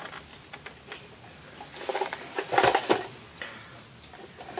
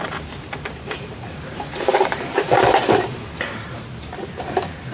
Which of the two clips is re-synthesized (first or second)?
second